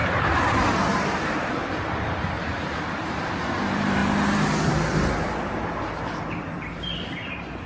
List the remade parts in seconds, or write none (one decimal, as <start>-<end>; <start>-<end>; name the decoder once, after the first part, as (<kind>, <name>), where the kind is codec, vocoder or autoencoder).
0.0-4.0 (vocoder, BigVGAN v2); 4.7-7.7